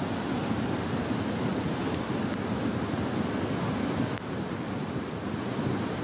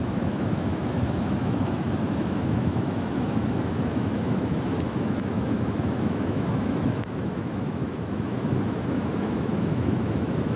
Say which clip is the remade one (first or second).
second